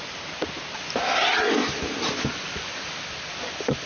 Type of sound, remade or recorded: recorded